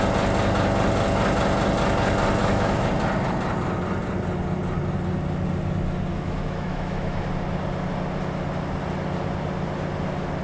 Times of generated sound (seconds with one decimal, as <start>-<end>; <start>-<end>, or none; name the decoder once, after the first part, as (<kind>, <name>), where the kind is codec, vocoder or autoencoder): 2.4-2.9 (autoencoder, DAC-VAE); 6.1-7.3